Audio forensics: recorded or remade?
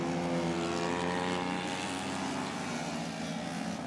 recorded